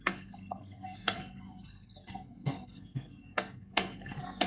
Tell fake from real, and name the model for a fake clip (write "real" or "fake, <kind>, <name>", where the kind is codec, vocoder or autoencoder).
fake, codec, SNAC